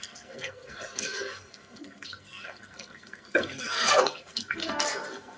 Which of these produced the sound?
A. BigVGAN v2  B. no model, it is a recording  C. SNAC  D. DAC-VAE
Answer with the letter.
C